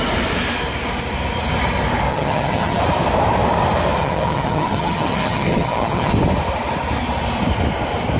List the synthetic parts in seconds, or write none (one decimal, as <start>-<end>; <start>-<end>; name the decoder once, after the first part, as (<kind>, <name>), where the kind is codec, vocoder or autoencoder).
2.1-2.8 (vocoder, HiFi-GAN); 4.0-6.1